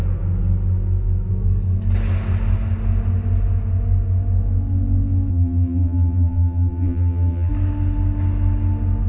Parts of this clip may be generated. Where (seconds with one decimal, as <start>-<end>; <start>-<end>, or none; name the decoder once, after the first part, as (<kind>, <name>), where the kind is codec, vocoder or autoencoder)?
5.3-7.5 (vocoder, BigVGAN v2)